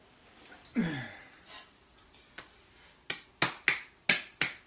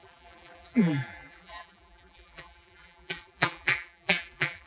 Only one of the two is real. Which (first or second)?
first